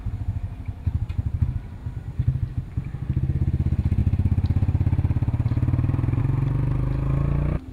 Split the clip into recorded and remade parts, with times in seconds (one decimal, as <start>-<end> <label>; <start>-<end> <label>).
0.0-0.9 recorded; 0.9-1.4 remade; 1.4-4.0 recorded; 4.0-6.2 remade; 6.2-7.7 recorded